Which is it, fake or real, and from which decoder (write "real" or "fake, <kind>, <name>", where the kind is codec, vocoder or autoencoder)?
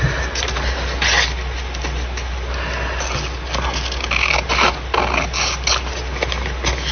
real